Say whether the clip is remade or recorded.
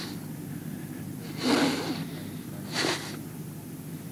recorded